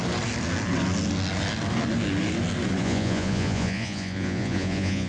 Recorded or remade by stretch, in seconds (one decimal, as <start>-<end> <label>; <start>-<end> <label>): 0.0-2.8 recorded; 2.8-5.1 remade